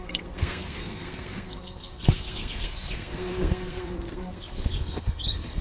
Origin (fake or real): fake